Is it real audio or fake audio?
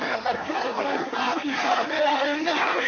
fake